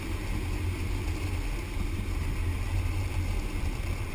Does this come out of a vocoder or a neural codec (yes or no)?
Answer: no